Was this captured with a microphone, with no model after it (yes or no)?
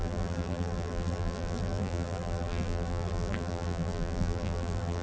no